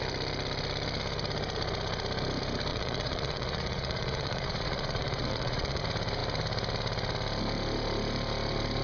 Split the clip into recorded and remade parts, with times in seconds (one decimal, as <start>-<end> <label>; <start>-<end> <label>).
0.0-2.7 recorded; 2.7-5.8 remade; 5.8-8.8 recorded

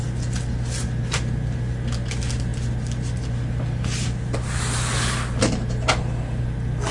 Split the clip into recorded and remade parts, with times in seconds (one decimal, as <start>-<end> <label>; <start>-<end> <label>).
0.0-6.9 recorded

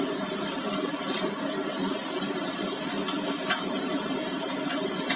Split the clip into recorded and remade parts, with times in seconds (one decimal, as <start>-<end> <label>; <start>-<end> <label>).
0.0-2.6 remade; 2.6-3.7 recorded; 3.7-5.2 remade

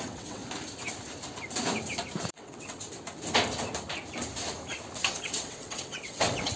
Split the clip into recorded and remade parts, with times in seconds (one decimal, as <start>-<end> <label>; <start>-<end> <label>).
0.0-0.4 remade; 0.4-2.3 recorded; 2.3-2.8 remade; 2.8-5.0 recorded; 5.0-6.6 remade

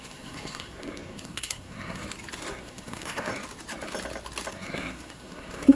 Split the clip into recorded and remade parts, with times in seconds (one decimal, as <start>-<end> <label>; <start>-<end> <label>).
0.0-2.0 remade; 2.0-2.5 recorded; 2.5-3.3 remade; 3.3-4.5 recorded; 4.5-5.8 remade

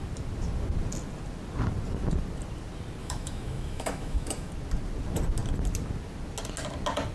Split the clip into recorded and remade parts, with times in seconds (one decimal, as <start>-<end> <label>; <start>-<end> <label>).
0.0-3.0 recorded; 3.0-4.5 remade; 4.5-7.1 recorded

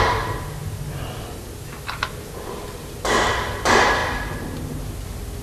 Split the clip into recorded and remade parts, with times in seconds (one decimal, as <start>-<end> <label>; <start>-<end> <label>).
0.0-5.4 recorded

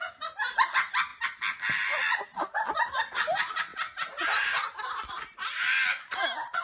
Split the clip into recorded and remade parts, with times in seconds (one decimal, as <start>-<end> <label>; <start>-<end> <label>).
0.0-6.6 recorded